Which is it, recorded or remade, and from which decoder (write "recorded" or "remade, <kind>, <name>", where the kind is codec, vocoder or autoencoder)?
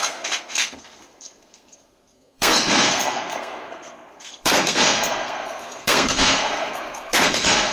remade, codec, SNAC